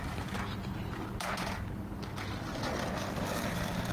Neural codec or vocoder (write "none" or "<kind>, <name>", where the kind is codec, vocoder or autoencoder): none